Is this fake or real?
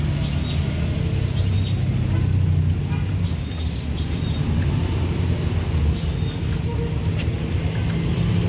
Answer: real